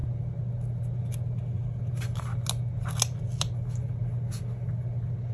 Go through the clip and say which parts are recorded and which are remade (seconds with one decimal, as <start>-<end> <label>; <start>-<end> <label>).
0.0-5.3 recorded